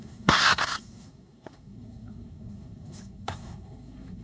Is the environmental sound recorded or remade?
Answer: remade